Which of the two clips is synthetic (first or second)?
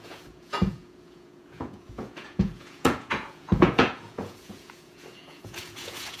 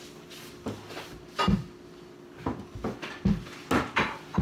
first